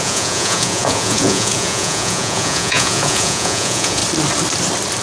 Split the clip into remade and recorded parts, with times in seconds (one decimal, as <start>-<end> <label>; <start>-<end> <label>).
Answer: 0.0-4.0 remade; 4.0-5.0 recorded